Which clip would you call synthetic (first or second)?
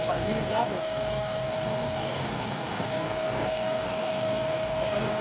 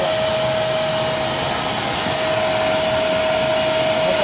first